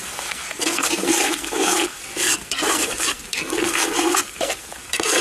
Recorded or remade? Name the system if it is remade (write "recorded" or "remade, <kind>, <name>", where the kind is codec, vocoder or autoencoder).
remade, codec, SNAC